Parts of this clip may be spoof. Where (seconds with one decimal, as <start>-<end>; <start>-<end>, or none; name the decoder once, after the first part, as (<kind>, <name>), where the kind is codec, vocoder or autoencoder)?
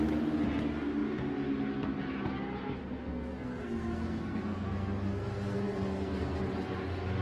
2.8-6.4 (codec, SNAC)